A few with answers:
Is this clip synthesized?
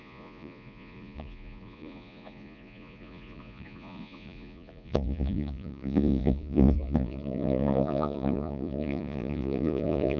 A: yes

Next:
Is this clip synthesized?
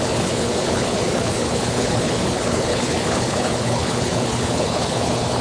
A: yes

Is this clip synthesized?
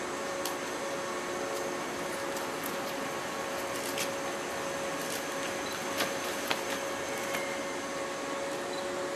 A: no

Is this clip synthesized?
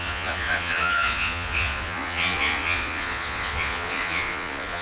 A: yes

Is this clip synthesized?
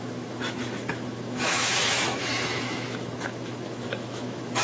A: yes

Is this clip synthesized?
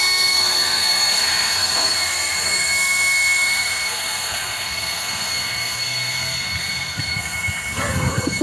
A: yes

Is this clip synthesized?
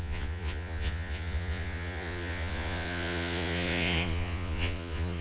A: yes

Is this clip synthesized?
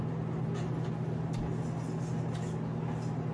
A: no